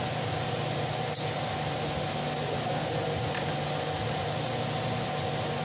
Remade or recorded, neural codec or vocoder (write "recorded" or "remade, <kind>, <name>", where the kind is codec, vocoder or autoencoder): recorded